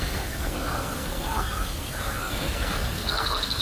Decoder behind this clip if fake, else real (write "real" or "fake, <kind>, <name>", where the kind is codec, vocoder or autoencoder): fake, codec, SNAC